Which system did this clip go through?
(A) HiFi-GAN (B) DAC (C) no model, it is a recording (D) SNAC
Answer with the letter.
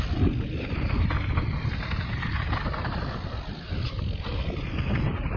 C